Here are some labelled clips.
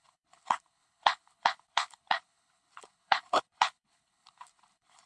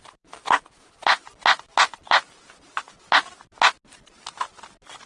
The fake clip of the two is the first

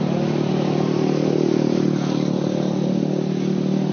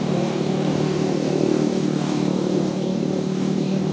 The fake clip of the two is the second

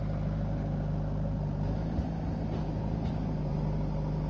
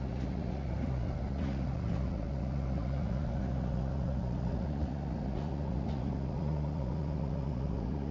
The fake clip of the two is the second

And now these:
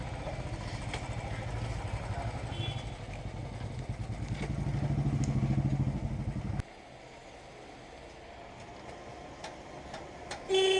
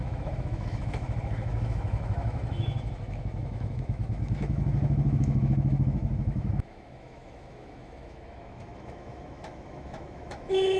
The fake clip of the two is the second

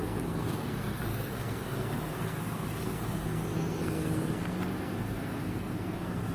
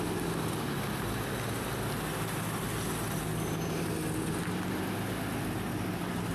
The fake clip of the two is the first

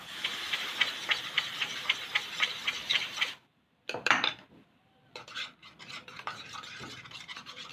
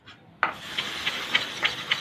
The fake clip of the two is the first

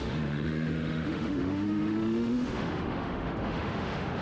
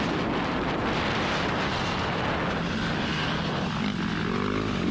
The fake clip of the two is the first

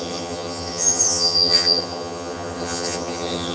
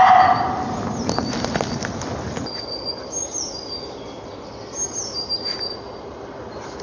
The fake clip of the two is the first